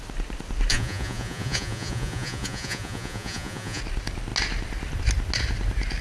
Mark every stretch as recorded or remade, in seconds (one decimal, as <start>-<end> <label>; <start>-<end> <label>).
0.0-0.7 recorded; 0.7-3.8 remade; 3.8-6.0 recorded